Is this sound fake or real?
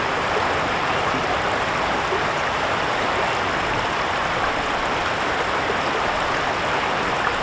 real